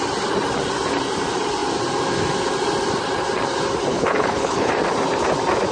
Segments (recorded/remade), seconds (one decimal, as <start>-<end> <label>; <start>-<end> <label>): 0.0-3.9 recorded; 3.9-4.7 remade; 4.7-5.7 recorded

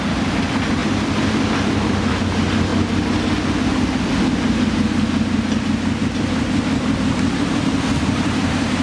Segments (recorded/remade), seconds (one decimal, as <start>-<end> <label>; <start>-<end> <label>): 0.0-2.7 remade; 2.7-6.0 recorded; 6.0-8.8 remade

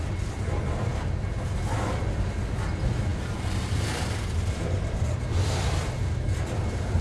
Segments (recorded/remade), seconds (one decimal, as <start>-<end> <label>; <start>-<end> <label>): 0.0-0.9 recorded; 0.9-1.4 remade; 1.4-3.1 recorded; 3.1-6.1 remade; 6.1-7.0 recorded